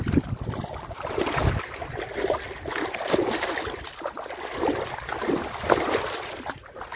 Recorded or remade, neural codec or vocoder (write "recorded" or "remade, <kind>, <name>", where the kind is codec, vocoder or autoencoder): recorded